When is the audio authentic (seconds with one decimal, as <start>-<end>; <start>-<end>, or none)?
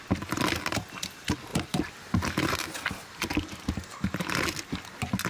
0.0-1.5; 2.1-5.3